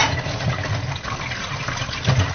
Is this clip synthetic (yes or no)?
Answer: no